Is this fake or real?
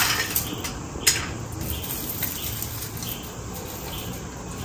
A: real